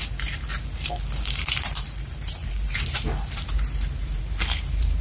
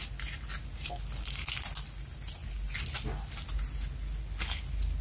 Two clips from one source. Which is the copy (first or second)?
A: first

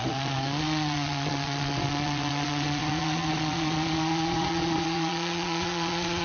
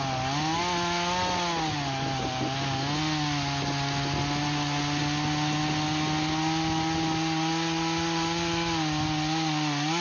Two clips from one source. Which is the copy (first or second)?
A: first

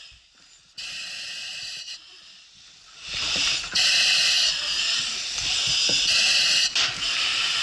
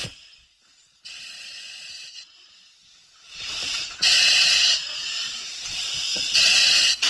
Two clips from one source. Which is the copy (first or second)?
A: second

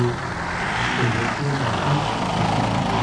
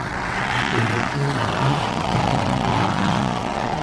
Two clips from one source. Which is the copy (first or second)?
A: second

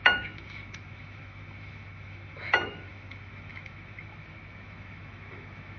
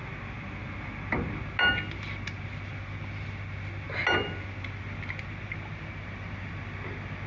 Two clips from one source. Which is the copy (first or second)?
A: first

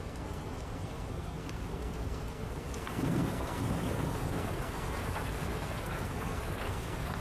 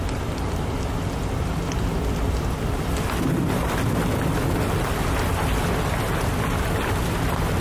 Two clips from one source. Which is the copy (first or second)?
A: first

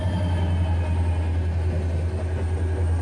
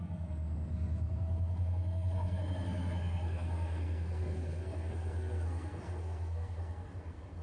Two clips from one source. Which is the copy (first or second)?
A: second